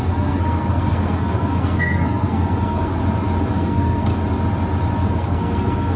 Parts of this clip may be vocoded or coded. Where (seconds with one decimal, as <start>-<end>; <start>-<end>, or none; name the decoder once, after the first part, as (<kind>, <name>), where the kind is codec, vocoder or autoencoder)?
0.0-3.0 (codec, SNAC); 3.5-4.1; 5.1-6.0